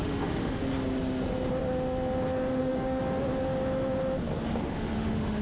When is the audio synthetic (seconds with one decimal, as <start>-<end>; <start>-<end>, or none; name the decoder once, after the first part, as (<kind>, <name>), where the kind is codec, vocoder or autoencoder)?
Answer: 0.0-0.6 (autoencoder, DAC-VAE); 2.6-3.0; 4.6-5.4